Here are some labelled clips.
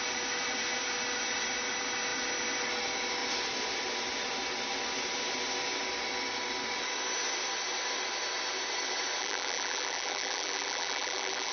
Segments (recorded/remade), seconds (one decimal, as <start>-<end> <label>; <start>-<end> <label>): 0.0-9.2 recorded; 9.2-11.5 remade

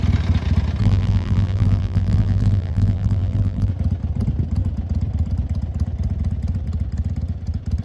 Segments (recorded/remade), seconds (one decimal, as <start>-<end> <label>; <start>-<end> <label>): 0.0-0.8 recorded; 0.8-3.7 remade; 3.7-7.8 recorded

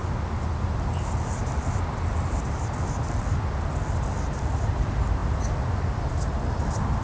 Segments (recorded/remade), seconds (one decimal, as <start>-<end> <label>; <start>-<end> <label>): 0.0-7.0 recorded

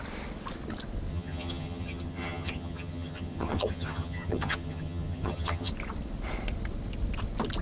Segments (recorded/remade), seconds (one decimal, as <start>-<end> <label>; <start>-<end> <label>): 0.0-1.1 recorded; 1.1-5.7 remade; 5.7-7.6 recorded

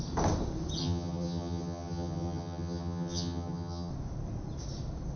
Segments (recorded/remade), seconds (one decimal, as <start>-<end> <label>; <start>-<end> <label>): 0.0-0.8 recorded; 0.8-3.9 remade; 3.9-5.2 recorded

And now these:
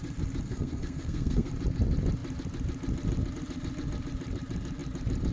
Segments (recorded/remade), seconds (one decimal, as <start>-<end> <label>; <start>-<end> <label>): 0.0-0.5 recorded; 0.5-1.5 remade; 1.5-5.3 recorded

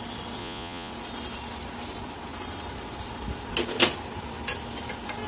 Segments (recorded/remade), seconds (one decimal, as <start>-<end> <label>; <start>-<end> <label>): 0.0-0.4 recorded; 0.4-0.9 remade; 0.9-5.3 recorded

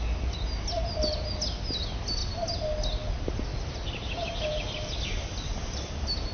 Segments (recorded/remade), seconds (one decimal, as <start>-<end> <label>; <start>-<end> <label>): 0.0-6.3 recorded